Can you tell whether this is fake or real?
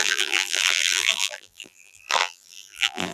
fake